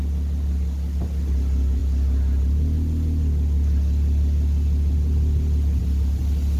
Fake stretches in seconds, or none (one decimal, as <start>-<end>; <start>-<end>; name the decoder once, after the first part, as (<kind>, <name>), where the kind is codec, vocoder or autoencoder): none